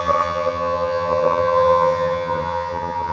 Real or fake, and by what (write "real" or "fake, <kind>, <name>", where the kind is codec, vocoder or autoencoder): fake, vocoder, HiFi-GAN